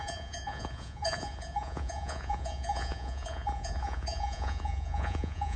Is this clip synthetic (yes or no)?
yes